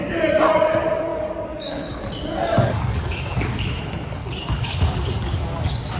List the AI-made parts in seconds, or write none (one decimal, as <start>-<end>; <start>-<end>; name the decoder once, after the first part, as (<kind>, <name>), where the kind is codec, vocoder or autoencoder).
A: 1.1-2.1 (codec, DAC); 2.5-3.8; 4.2-6.0